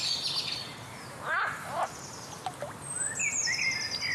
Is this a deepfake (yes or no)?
no